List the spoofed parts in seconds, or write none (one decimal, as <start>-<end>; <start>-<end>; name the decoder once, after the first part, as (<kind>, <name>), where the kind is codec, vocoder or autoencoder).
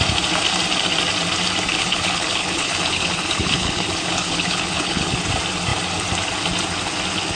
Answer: 1.7-5.2 (codec, HILCodec)